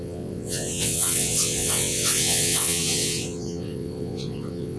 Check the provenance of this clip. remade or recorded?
remade